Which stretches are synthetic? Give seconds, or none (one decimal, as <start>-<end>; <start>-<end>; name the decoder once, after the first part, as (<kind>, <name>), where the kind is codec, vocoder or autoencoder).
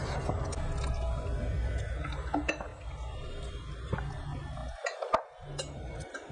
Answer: none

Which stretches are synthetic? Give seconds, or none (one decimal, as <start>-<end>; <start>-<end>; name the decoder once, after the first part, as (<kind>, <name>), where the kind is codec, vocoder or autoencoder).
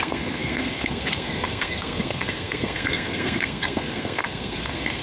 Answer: 0.0-5.0 (codec, SNAC)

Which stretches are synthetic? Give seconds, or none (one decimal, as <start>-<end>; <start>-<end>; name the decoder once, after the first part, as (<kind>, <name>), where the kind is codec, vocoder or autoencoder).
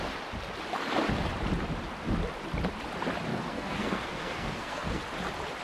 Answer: 3.3-5.0 (codec, SNAC)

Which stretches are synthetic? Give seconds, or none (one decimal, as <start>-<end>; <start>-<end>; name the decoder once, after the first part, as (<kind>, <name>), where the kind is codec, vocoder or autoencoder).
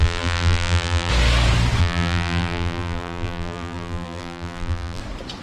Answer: 0.0-1.1 (vocoder, BigVGAN v2); 1.8-5.0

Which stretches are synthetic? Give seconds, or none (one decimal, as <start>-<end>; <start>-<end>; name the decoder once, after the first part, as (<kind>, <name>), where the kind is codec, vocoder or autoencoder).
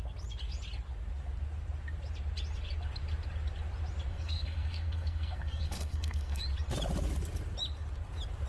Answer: 4.1-6.4 (codec, SNAC)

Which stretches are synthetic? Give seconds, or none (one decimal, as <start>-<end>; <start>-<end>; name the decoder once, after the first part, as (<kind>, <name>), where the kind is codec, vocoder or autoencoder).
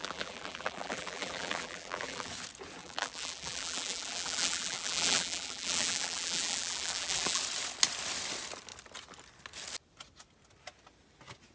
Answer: 0.0-2.3 (vocoder, BigVGAN v2); 2.8-7.4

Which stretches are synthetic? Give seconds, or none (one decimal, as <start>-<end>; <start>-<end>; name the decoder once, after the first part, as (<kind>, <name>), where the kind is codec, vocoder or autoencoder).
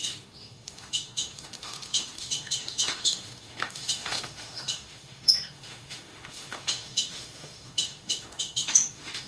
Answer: 0.0-9.3 (autoencoder, DAC-VAE)